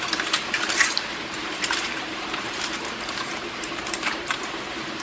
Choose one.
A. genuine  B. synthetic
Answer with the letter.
B